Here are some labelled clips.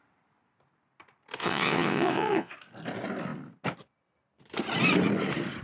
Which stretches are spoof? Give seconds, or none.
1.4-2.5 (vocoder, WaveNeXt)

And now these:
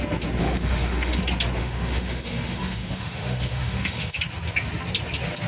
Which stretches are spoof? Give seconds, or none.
0.4-1.2 (autoencoder, DAC-VAE); 1.6-4.2

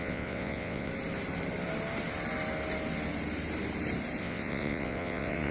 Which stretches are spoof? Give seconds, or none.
0.0-0.9 (vocoder, WaveNeXt); 4.2-5.5